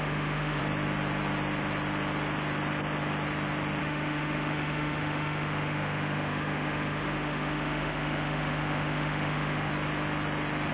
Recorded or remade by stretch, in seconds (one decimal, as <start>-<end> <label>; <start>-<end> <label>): 0.0-0.6 remade; 0.6-3.8 recorded; 3.8-9.7 remade; 9.7-10.7 recorded